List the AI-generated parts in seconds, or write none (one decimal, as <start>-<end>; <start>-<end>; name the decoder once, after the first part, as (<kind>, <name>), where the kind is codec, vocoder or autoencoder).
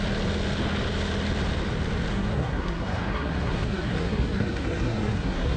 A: 2.1-5.6 (codec, SNAC)